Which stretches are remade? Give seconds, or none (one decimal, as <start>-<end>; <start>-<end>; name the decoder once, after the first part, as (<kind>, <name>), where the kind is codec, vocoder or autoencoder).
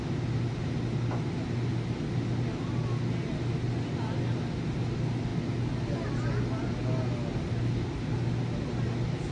none